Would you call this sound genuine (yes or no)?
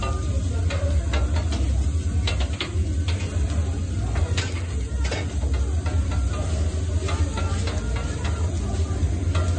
yes